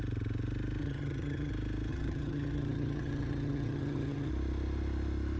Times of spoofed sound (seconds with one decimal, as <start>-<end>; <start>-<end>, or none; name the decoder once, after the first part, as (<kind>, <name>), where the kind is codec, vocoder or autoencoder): 0.8-1.5 (vocoder, HiFi-GAN); 1.9-4.3